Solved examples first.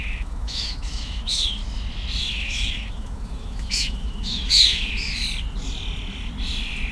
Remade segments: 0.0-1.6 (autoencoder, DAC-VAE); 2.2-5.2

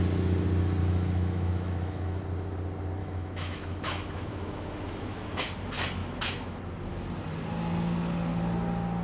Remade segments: 0.8-2.2 (autoencoder, DAC-VAE); 3.0-5.4; 6.0-6.6

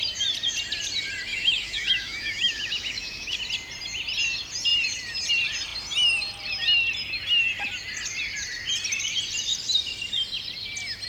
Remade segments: 1.3-3.4 (autoencoder, DAC-VAE)

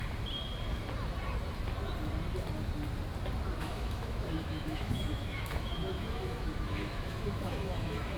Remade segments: 3.6-8.2 (autoencoder, DAC-VAE)

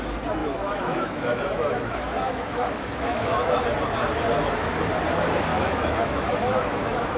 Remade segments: 0.4-3.6 (autoencoder, DAC-VAE); 5.5-7.2

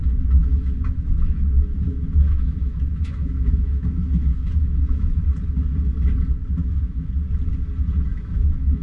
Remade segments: 0.4-5.2 (autoencoder, DAC-VAE); 6.6-7.1; 8.1-8.8

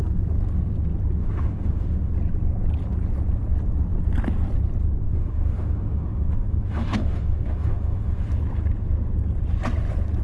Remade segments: 1.2-2.1 (autoencoder, DAC-VAE); 5.0-8.3